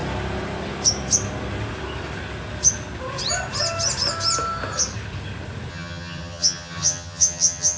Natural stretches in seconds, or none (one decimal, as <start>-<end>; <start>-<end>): 0.0-5.7

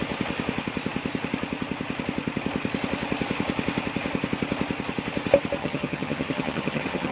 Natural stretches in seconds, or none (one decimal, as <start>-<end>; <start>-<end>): 0.0-5.6

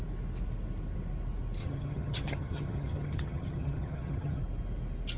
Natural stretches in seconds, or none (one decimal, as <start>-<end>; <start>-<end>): 0.0-1.6; 4.4-5.2

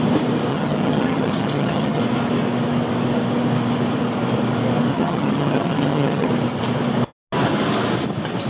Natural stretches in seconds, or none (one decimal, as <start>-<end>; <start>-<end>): 0.0-0.5; 2.0-4.9; 6.3-8.5

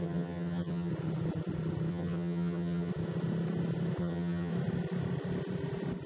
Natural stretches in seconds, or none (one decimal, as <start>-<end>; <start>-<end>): 0.9-1.9; 2.9-4.0; 4.5-6.1